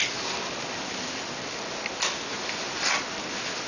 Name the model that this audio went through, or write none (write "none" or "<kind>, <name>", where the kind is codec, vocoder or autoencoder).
none